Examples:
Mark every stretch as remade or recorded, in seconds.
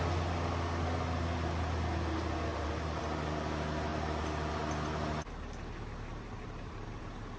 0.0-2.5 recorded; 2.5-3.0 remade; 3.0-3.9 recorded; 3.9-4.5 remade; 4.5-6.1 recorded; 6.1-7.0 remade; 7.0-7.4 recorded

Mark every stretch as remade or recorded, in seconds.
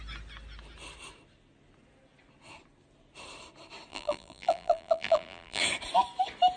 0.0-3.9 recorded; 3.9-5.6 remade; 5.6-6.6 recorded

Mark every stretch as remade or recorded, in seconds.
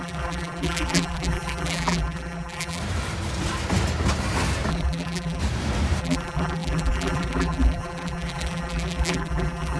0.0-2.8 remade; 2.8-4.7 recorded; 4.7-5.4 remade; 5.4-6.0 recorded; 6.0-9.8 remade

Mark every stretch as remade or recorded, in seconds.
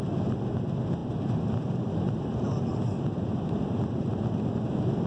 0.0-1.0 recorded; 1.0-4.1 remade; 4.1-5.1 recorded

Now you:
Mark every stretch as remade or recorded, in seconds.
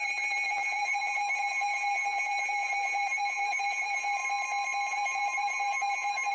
0.0-4.2 remade; 4.2-4.9 recorded; 4.9-6.3 remade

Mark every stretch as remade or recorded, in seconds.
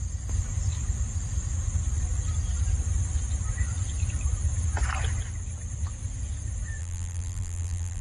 0.0-6.8 recorded; 6.8-8.0 remade